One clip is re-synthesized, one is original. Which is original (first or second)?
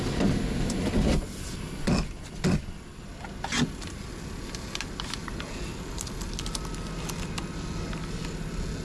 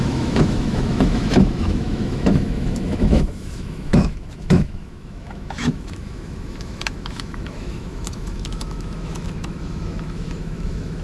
first